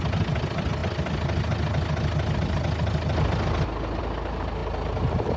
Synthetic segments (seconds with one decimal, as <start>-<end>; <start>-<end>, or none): none